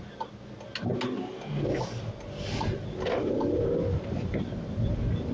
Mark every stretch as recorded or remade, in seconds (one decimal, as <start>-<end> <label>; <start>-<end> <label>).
0.0-5.3 recorded